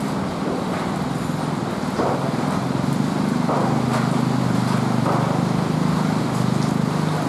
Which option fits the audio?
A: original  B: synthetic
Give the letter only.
A